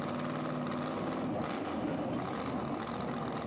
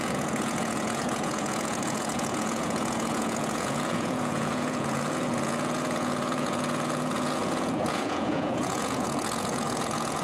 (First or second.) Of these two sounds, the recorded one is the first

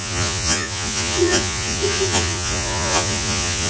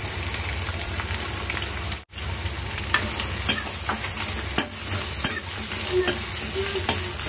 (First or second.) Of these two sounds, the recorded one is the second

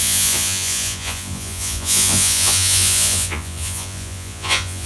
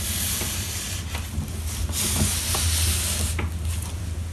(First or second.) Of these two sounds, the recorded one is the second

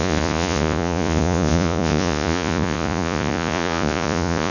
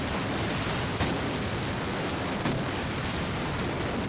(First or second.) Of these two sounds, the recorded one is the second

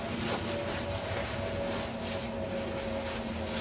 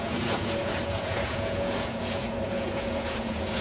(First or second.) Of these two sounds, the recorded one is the first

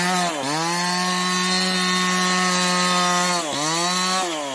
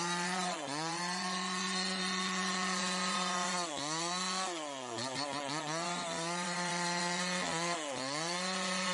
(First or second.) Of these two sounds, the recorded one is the first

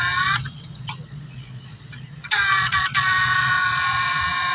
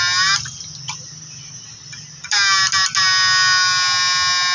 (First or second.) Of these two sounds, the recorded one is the second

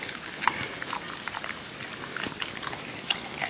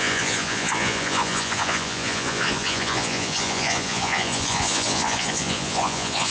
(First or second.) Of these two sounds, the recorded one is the first